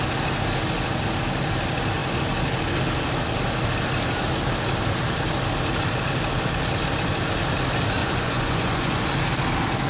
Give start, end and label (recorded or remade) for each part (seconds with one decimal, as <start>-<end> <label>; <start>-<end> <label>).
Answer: 0.0-8.0 recorded; 8.0-9.0 remade; 9.0-9.9 recorded